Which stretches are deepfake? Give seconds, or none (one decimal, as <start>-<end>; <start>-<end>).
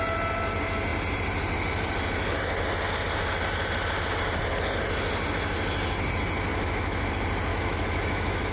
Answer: 6.5-7.1; 7.5-8.5